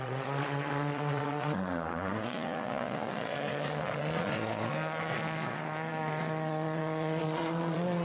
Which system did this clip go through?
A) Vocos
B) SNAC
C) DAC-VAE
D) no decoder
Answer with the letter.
A